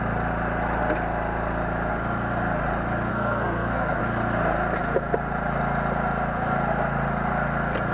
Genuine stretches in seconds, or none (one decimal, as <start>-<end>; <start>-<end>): 0.0-3.1; 4.0-7.9